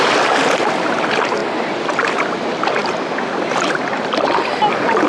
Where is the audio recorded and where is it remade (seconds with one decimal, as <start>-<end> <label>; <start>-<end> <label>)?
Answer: 0.0-5.1 recorded

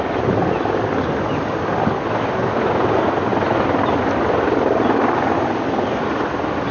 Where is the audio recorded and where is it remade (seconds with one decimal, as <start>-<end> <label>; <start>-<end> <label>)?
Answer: 0.0-6.7 recorded

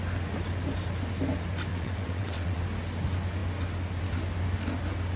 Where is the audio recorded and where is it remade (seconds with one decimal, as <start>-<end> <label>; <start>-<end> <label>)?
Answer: 0.0-1.7 recorded; 1.7-2.6 remade; 2.6-5.2 recorded

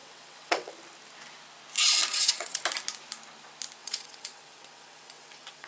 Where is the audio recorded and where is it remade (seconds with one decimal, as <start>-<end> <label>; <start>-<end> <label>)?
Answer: 0.0-0.7 remade; 0.7-2.1 recorded; 2.1-2.6 remade; 2.6-3.8 recorded; 3.8-5.7 remade

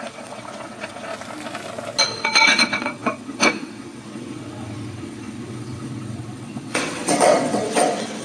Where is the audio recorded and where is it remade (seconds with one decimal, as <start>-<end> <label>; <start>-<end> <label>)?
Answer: 0.0-1.1 remade; 1.1-2.0 recorded; 2.0-8.2 remade

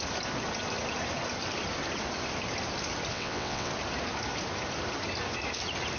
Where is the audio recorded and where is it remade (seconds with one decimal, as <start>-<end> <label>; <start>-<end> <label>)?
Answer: 0.0-3.1 recorded; 3.1-3.7 remade; 3.7-6.0 recorded

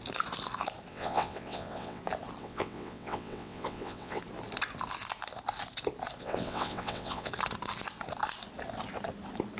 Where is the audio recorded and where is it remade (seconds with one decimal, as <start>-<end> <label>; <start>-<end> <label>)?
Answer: 0.0-0.9 recorded; 0.9-2.0 remade; 2.0-2.4 recorded; 2.4-4.2 remade; 4.2-6.2 recorded; 6.2-7.3 remade; 7.3-9.6 recorded